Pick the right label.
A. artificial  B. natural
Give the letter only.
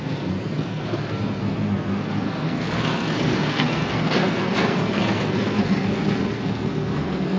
A